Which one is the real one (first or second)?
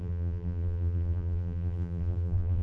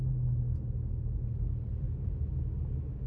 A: second